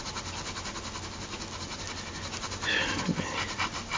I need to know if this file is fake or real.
real